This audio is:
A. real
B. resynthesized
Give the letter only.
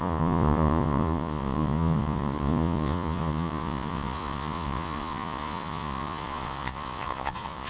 B